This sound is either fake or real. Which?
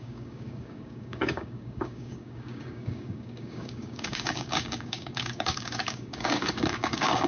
fake